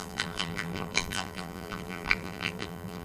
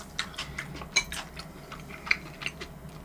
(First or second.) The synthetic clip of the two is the first